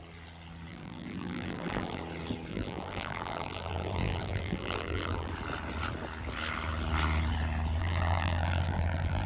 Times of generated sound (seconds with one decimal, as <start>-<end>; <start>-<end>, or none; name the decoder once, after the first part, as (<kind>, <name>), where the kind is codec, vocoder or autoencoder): 0.7-2.0 (vocoder, BigVGAN v2); 2.5-5.3; 7.8-9.3